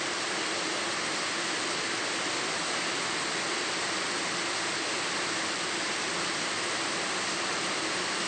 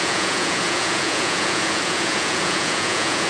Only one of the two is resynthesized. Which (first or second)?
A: second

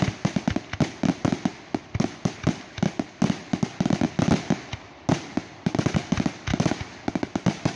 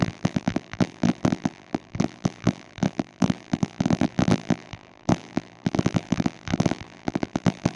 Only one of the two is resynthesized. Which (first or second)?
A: second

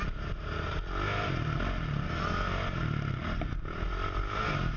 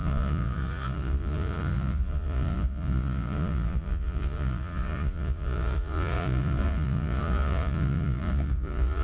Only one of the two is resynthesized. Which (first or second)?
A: second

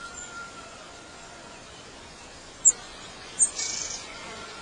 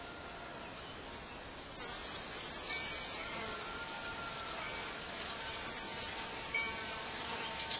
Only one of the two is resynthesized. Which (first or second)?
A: first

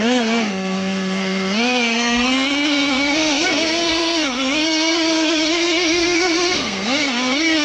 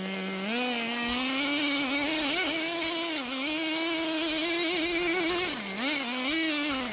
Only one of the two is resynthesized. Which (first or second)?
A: first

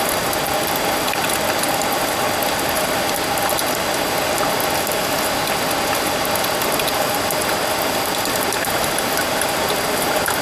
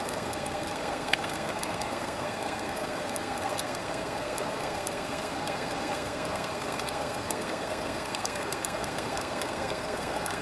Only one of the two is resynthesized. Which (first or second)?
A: second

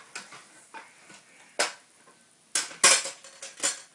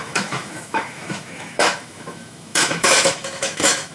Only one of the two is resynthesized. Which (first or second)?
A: second